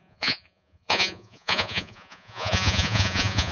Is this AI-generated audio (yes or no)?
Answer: yes